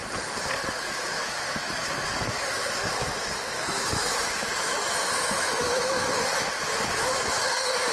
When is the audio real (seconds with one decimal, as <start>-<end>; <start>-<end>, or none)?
0.0-0.8